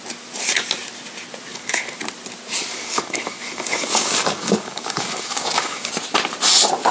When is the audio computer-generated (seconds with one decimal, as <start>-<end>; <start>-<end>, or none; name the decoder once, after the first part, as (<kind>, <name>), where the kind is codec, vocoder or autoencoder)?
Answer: 1.5-2.0 (codec, DAC); 2.7-5.9